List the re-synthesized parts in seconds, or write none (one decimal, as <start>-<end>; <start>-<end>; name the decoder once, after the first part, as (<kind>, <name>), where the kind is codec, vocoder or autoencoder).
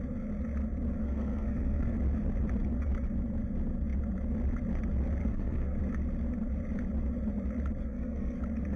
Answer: 1.0-2.0 (codec, SNAC); 5.2-5.8; 7.8-8.4